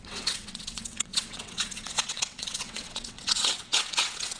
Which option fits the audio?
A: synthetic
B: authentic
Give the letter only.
A